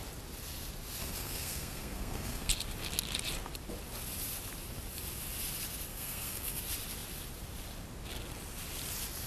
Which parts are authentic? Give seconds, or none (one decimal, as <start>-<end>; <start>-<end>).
0.0-1.0; 2.5-5.9; 6.6-9.3